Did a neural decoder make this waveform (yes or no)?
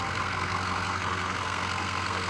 yes